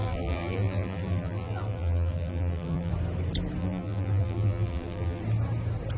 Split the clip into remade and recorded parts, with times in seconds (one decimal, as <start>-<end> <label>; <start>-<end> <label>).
0.0-2.9 remade; 2.9-3.6 recorded; 3.6-5.2 remade; 5.2-6.0 recorded